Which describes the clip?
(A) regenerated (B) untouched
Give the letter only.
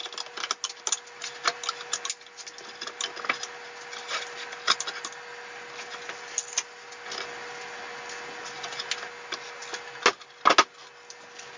B